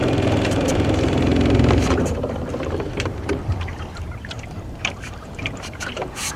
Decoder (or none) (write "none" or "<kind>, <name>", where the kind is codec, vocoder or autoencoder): vocoder, BigVGAN v2